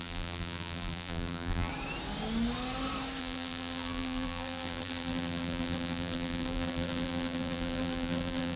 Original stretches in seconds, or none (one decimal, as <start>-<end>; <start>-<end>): 1.7-3.2